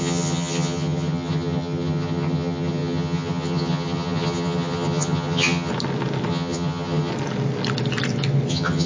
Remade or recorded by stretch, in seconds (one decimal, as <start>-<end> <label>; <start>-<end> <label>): 0.0-5.7 remade; 5.7-6.3 recorded; 6.3-7.1 remade; 7.1-8.5 recorded; 8.5-8.9 remade